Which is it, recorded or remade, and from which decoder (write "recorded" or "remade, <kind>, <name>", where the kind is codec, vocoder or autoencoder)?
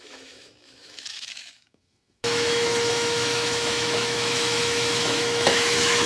remade, autoencoder, DAC-VAE